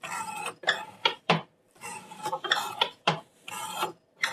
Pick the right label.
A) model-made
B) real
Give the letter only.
A